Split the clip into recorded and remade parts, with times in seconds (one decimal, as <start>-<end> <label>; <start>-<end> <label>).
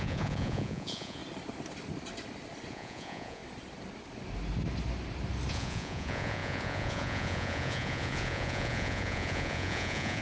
0.0-1.2 remade; 1.2-2.7 recorded; 2.7-3.4 remade; 3.4-5.5 recorded; 5.5-10.2 remade